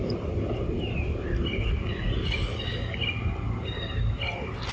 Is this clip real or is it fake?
real